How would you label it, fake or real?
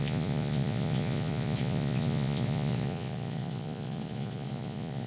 fake